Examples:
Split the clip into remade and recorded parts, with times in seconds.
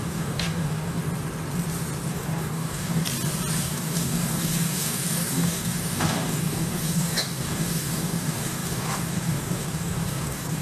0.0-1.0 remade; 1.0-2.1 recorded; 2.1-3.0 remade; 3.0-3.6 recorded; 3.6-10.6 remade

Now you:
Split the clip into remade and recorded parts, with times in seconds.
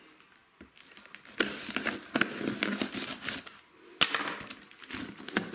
0.0-5.5 recorded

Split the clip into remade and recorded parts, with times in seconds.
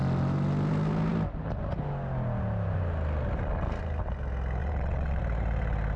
0.0-4.6 recorded; 4.6-5.2 remade; 5.2-6.0 recorded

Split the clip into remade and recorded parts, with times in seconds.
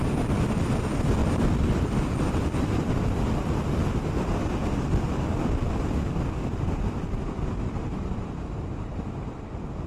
0.0-1.2 recorded; 1.2-4.2 remade; 4.2-9.9 recorded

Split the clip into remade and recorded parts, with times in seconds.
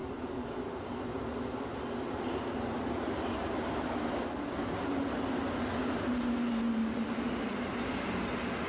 0.0-8.7 recorded